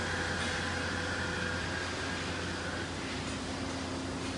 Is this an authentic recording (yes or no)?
yes